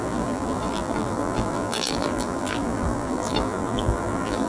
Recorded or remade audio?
remade